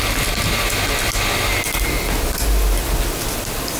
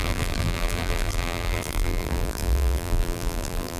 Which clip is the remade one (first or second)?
second